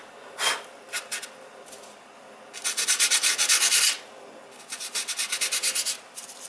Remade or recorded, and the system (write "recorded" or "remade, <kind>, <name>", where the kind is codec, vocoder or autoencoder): recorded